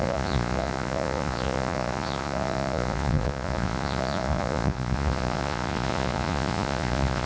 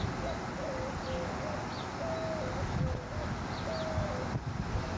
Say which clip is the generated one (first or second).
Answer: first